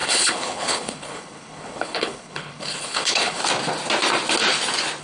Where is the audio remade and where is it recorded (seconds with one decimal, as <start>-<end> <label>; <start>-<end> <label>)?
0.0-3.4 remade; 3.4-5.0 recorded